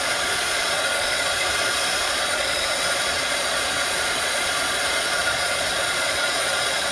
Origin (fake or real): fake